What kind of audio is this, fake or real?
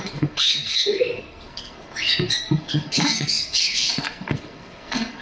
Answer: fake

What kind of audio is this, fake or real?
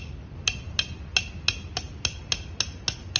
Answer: real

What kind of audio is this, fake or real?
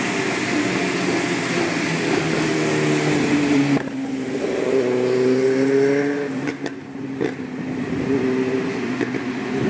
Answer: real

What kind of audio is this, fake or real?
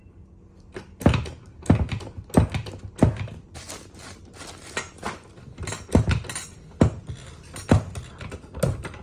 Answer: real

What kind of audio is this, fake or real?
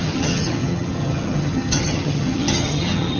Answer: fake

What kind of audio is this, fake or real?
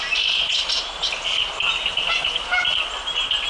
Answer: real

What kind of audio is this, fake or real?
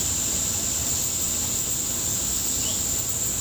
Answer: real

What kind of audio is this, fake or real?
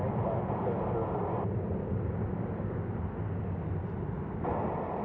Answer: real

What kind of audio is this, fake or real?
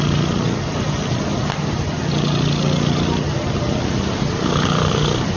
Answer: real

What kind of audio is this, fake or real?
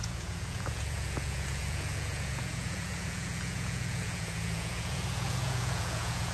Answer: fake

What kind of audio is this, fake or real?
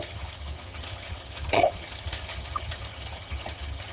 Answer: fake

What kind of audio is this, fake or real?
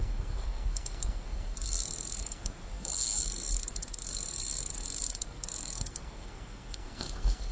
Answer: fake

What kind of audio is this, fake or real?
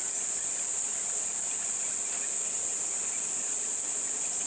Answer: real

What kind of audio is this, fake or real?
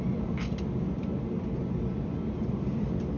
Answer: real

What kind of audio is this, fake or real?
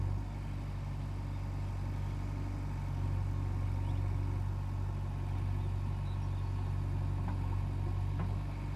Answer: real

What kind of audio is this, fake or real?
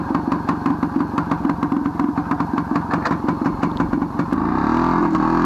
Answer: real